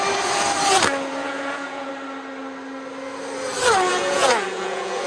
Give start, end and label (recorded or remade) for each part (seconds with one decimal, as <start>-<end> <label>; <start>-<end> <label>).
0.0-1.2 recorded; 1.2-1.9 remade; 1.9-3.9 recorded; 3.9-5.1 remade